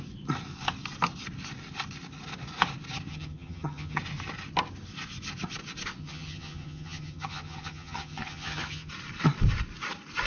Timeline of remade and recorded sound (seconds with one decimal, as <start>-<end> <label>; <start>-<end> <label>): 0.0-3.1 recorded; 3.1-4.0 remade; 4.0-6.0 recorded; 6.0-8.9 remade; 8.9-10.3 recorded